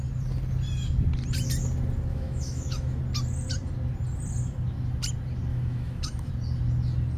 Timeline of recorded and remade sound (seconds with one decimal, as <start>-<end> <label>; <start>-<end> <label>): 0.0-2.1 recorded; 2.1-3.0 remade; 3.0-5.5 recorded; 5.5-6.3 remade; 6.3-7.2 recorded

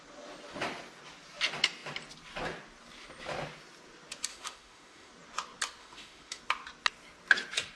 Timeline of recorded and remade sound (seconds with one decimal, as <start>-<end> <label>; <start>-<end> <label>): 0.0-4.3 recorded; 4.3-5.1 remade; 5.1-5.8 recorded; 5.8-6.4 remade; 6.4-7.8 recorded

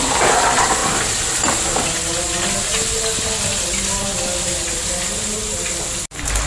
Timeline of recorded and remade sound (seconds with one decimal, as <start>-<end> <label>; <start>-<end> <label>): 0.0-6.5 recorded

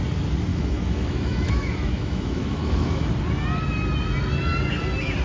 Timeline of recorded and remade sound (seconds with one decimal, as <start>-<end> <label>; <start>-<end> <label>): 0.0-0.5 recorded; 0.5-3.1 remade; 3.1-5.2 recorded

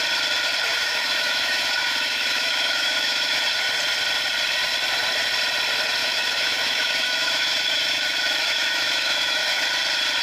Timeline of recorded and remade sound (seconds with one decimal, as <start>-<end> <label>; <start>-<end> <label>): 0.0-0.7 recorded; 0.7-3.4 remade; 3.4-6.0 recorded; 6.0-9.6 remade; 9.6-10.2 recorded